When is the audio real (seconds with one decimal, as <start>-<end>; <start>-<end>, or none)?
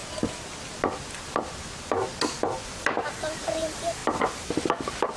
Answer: 0.0-3.1; 4.0-5.2